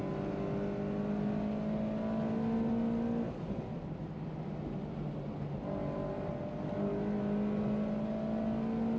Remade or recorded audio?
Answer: recorded